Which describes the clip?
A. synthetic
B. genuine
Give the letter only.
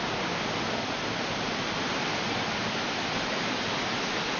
B